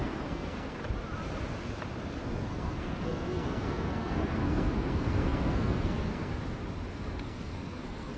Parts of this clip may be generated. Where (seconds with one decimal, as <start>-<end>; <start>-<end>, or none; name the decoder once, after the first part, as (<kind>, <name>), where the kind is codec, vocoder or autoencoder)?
0.0-0.8 (codec, SNAC); 2.2-6.4; 6.9-8.2